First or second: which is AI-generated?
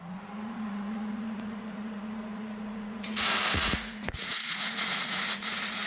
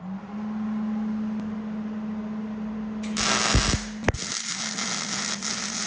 first